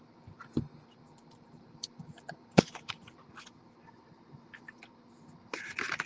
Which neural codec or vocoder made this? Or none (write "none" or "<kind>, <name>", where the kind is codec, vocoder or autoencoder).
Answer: vocoder, BigVGAN v2